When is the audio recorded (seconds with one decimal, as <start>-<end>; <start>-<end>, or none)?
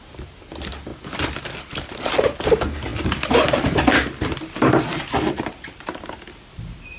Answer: 0.0-7.0